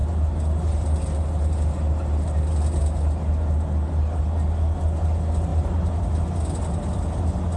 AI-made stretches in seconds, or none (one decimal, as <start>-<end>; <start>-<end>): none